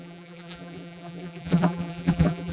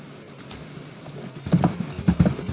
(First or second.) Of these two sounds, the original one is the second